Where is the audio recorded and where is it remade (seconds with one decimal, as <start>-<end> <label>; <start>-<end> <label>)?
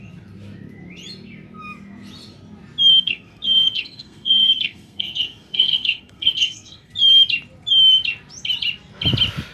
0.0-2.9 recorded; 2.9-6.9 remade; 6.9-9.5 recorded